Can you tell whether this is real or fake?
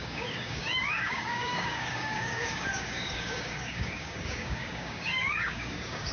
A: fake